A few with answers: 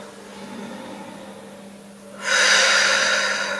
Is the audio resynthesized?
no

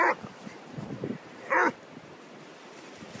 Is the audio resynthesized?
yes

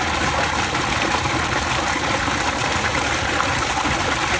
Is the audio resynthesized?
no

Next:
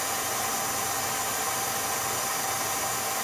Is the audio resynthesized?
no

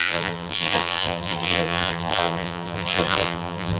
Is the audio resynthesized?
yes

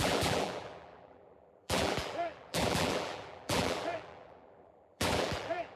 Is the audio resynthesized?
yes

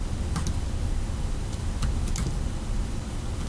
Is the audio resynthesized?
no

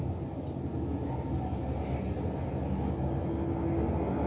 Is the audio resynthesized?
no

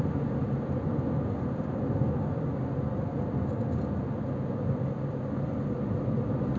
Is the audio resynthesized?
no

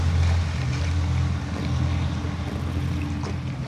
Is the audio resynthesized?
no